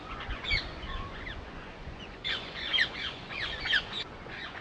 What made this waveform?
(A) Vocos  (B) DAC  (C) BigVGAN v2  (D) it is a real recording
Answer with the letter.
A